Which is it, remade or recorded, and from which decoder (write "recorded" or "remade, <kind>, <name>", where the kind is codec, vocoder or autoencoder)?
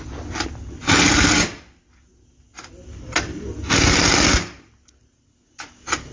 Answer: recorded